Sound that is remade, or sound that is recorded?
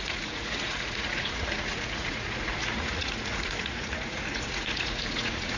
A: remade